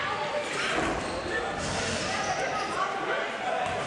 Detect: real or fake real